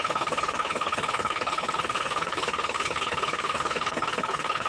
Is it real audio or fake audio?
fake